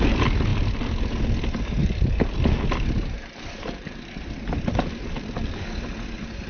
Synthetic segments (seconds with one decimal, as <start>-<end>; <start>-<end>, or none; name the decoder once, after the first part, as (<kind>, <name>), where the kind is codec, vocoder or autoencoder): 1.8-5.2 (vocoder, BigVGAN v2)